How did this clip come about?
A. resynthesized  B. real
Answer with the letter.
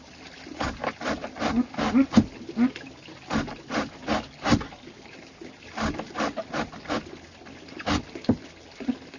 B